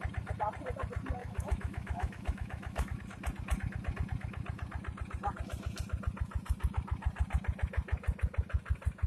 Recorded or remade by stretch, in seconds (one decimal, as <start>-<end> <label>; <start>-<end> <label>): 0.0-1.2 recorded; 1.2-3.0 remade; 3.0-9.1 recorded